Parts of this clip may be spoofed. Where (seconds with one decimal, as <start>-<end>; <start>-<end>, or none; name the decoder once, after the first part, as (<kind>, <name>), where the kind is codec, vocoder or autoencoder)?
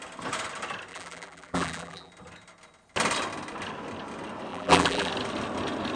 0.9-2.1 (vocoder, BigVGAN v2); 4.5-5.1